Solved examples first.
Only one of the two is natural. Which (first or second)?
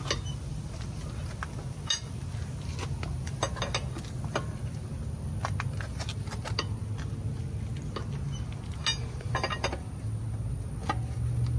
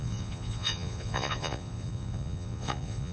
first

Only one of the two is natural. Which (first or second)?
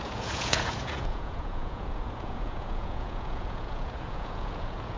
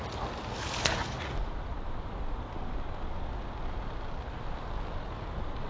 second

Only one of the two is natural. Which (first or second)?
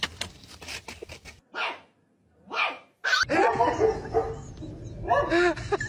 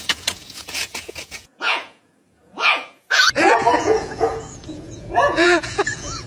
first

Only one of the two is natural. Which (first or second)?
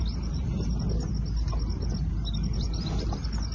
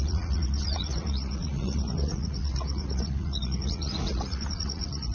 first